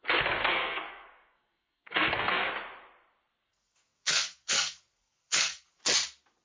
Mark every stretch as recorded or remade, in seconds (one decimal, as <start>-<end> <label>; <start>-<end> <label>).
0.0-0.4 recorded; 0.4-2.5 remade; 2.5-3.4 recorded; 3.4-5.8 remade; 5.8-6.4 recorded